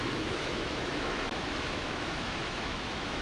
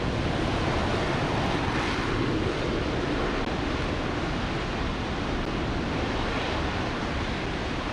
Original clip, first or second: second